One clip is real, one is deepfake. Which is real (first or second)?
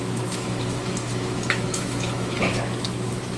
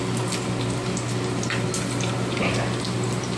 second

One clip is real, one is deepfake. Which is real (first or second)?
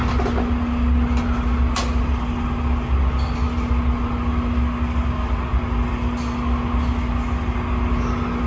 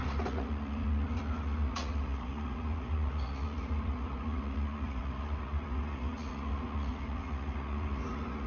first